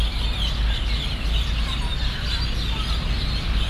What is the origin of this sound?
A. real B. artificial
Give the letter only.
A